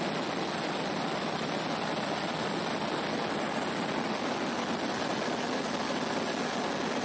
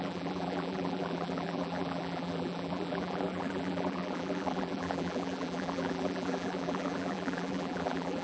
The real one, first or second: first